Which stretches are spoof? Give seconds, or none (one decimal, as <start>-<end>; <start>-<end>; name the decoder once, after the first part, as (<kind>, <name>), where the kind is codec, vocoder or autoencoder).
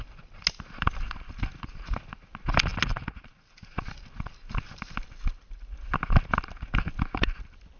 none